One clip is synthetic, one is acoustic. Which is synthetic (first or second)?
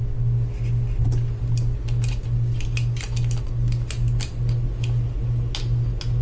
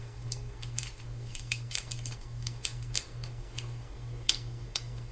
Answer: second